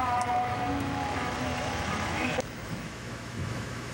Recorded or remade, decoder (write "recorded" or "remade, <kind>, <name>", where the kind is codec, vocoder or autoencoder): remade, autoencoder, DAC-VAE